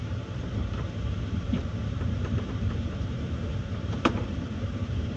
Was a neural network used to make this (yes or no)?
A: yes